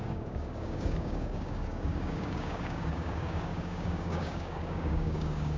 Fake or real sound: fake